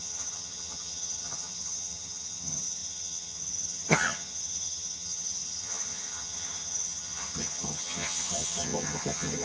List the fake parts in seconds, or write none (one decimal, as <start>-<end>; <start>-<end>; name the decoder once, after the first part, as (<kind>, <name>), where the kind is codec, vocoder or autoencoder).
0.0-9.4 (vocoder, HiFi-GAN)